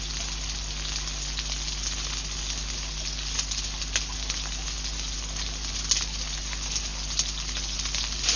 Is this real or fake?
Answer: real